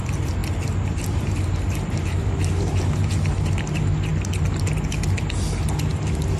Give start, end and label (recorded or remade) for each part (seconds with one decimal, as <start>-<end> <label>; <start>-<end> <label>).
0.0-6.4 recorded